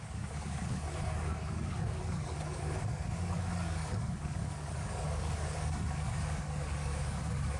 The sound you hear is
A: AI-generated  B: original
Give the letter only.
A